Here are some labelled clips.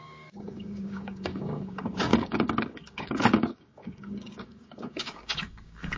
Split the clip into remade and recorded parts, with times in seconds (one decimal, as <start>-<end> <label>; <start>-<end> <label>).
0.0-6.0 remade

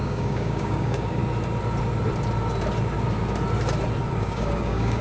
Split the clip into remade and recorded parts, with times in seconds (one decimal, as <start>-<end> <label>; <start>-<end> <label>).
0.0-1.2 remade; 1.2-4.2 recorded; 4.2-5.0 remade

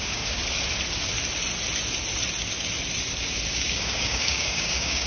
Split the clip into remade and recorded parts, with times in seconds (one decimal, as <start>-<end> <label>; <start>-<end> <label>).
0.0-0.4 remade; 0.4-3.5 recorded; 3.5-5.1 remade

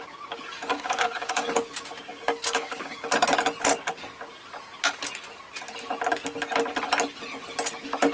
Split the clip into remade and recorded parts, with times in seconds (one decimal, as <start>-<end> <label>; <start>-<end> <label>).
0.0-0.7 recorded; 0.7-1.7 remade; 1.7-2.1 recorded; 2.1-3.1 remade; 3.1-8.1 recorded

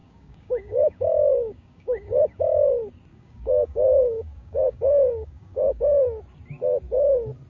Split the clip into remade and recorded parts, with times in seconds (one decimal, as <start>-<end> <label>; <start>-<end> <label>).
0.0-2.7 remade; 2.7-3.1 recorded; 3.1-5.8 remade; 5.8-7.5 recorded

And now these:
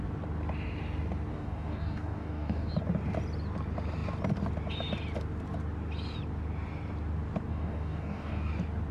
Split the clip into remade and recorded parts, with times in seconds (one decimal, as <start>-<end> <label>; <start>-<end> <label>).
0.0-1.3 recorded; 1.3-2.7 remade; 2.7-7.5 recorded; 7.5-8.5 remade; 8.5-8.9 recorded

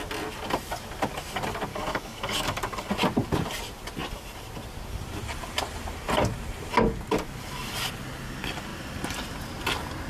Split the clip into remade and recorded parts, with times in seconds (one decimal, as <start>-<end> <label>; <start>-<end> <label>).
0.0-1.7 recorded; 1.7-2.9 remade; 2.9-10.1 recorded